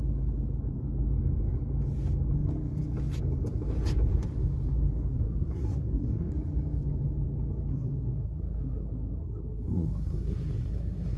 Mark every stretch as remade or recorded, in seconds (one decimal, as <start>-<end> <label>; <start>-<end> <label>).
0.0-5.1 recorded; 5.1-6.3 remade; 6.3-7.7 recorded; 7.7-11.2 remade